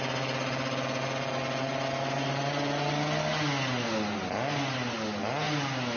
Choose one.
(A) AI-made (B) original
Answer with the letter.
B